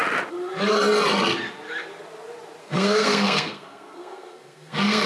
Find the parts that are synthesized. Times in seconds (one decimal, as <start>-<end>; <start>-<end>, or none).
2.6-5.1